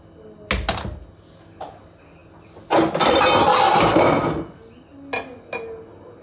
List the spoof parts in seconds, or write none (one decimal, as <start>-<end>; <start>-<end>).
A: none